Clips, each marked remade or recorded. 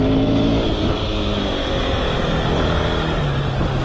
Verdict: recorded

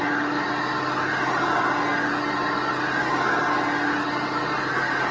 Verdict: recorded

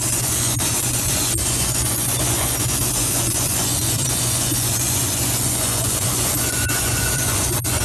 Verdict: remade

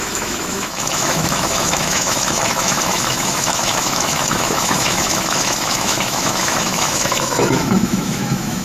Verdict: remade